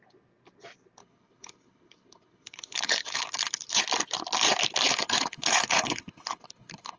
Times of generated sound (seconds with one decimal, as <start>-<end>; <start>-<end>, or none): 1.0-3.8; 4.9-7.0